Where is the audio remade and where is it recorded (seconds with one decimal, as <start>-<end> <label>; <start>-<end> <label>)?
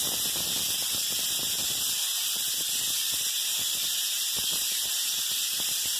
0.0-6.0 recorded